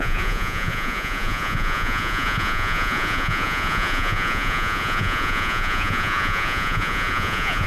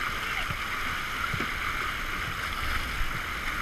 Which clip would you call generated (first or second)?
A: first